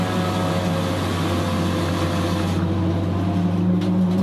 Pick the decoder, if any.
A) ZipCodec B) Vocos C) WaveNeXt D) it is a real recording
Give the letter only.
D